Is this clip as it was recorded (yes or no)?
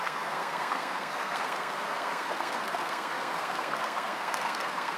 no